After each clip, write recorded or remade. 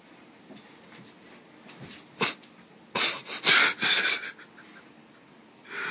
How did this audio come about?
recorded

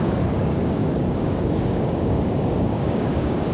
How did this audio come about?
remade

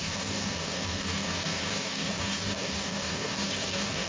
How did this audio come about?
remade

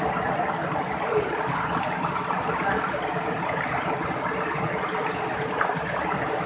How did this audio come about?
recorded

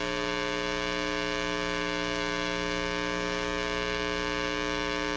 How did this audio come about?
remade